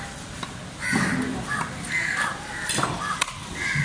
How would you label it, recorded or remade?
recorded